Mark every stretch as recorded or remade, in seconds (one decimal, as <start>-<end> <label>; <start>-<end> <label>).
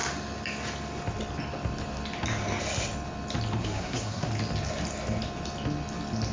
0.0-3.6 recorded; 3.6-4.3 remade; 4.3-6.3 recorded